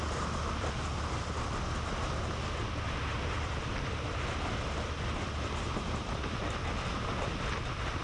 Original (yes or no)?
yes